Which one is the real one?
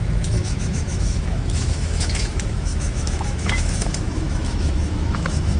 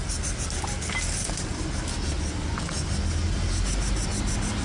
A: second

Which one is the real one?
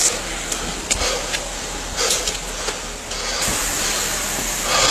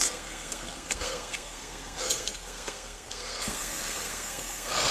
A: first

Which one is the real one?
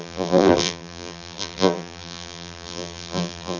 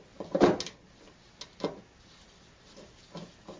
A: second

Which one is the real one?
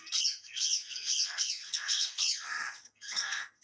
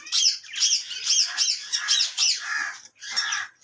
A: second